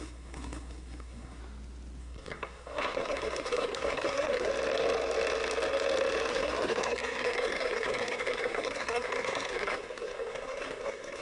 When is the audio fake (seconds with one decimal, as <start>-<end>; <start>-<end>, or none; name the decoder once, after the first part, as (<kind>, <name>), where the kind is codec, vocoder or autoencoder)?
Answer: 0.0-1.4 (codec, SNAC); 2.0-4.5; 6.3-11.2